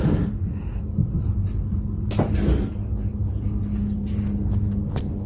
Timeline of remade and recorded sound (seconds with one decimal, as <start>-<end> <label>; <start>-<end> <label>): 0.0-5.3 recorded